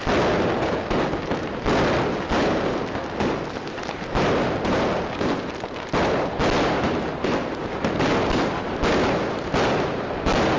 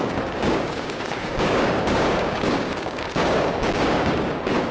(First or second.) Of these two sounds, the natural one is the first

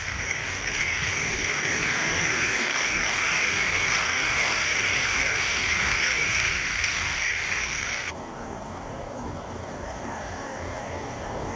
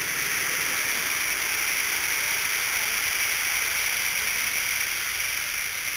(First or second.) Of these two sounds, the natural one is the second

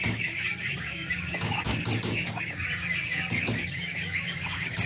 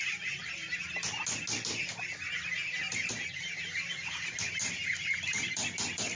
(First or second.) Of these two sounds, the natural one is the second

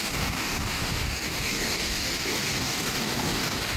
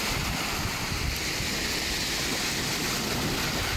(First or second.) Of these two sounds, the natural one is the second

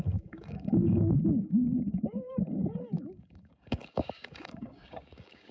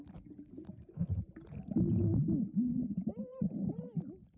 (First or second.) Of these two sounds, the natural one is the second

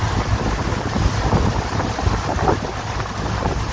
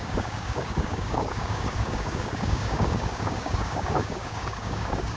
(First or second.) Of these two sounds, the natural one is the first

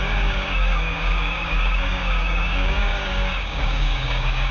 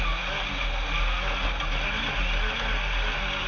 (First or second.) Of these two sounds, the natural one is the second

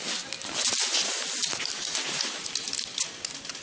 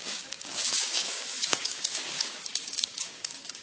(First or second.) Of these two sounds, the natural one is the first